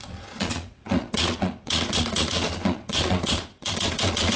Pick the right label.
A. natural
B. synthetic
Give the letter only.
B